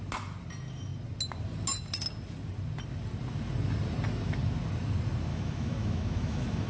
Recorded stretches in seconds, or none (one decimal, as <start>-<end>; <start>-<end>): 0.0-5.3